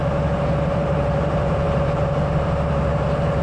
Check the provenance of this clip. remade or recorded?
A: remade